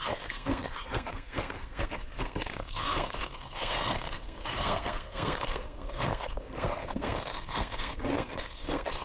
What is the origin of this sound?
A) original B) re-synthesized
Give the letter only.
B